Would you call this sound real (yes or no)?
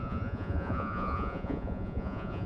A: no